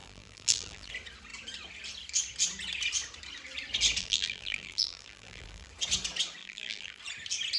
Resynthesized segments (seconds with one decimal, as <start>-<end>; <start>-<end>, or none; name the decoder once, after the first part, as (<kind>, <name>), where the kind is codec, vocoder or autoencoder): 0.0-0.9 (vocoder, BigVGAN v2); 4.0-5.7; 6.4-7.0